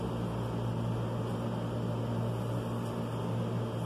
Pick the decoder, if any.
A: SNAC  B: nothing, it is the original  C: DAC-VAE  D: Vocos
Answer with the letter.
B